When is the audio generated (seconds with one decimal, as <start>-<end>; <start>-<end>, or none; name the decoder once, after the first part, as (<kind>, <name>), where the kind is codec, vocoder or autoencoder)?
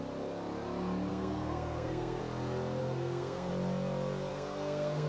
1.1-2.2 (codec, SNAC); 2.8-3.5; 4.3-5.1